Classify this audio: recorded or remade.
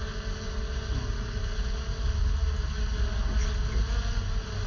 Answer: recorded